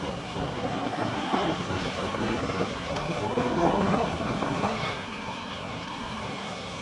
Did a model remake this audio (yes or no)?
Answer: yes